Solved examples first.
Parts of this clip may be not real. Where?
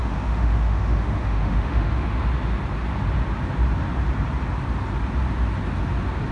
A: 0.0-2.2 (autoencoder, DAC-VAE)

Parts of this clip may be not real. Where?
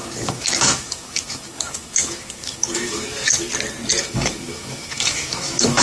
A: 0.0-3.5 (autoencoder, DAC-VAE); 4.0-5.8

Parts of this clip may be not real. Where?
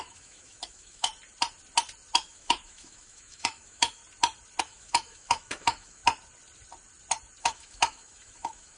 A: 0.0-1.1 (autoencoder, DAC-VAE); 2.2-4.0; 4.6-6.0; 7.4-8.8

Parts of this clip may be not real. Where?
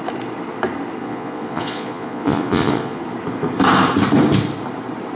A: 1.0-3.0 (vocoder, Vocos)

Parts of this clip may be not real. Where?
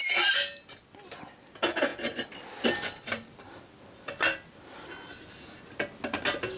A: none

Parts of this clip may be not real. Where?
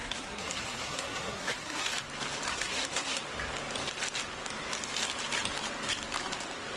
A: 0.0-1.9 (codec, SNAC); 2.5-3.2